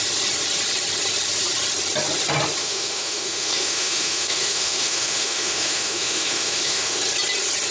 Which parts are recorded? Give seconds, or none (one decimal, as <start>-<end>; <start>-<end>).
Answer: 0.0-2.6; 7.0-7.7